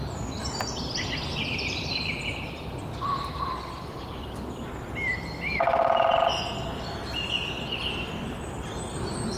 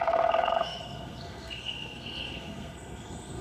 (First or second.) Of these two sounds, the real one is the first